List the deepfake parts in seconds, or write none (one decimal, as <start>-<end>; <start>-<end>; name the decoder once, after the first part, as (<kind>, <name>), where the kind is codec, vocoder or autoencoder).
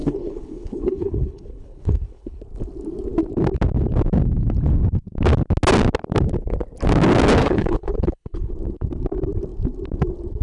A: 0.0-2.4 (codec, HILCodec); 7.4-8.5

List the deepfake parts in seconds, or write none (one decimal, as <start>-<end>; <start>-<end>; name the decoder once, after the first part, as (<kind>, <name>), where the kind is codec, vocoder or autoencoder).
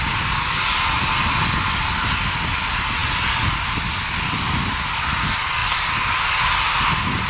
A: none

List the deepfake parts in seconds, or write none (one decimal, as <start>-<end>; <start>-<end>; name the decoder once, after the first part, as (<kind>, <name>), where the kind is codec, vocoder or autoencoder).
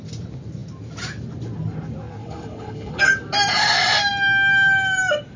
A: 2.2-3.0 (codec, HILCodec)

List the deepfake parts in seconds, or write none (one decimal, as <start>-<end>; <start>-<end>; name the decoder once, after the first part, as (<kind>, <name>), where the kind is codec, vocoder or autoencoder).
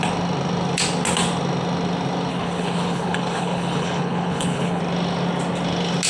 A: 2.3-4.8 (codec, HILCodec)